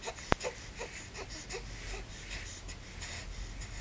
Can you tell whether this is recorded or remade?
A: recorded